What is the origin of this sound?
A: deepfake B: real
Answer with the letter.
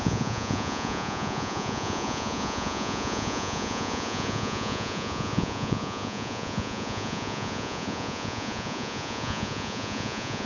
A